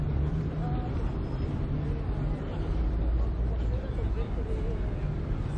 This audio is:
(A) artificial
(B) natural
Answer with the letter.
B